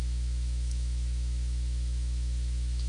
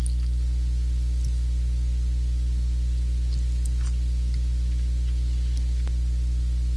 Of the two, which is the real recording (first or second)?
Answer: second